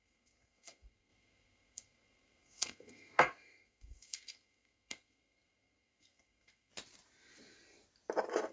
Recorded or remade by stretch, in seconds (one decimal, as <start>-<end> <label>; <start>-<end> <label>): 0.0-6.7 remade; 6.7-8.5 recorded

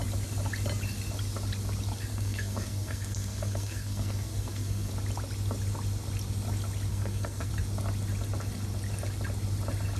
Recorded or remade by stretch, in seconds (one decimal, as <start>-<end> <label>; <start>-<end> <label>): 0.0-2.1 recorded; 2.1-4.9 remade; 4.9-6.9 recorded; 6.9-7.5 remade; 7.5-10.0 recorded

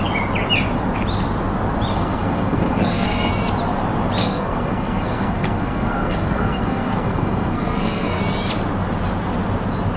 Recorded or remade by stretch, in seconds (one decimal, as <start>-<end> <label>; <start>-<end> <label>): 0.0-1.9 recorded; 1.9-3.3 remade; 3.3-4.2 recorded; 4.2-8.2 remade; 8.2-10.0 recorded